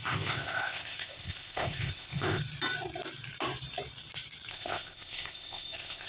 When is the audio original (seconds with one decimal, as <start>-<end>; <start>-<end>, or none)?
2.4-4.5